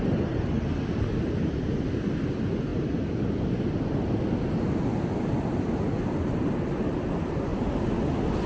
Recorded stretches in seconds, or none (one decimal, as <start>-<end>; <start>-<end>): 0.0-8.5